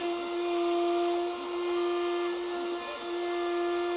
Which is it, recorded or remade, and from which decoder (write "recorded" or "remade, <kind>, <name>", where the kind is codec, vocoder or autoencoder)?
recorded